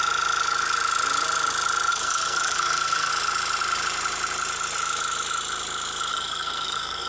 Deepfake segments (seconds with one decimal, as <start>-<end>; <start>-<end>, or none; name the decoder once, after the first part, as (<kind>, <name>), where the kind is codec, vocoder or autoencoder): 1.9-3.1 (codec, SNAC); 6.1-7.1